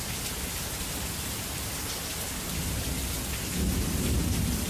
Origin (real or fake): real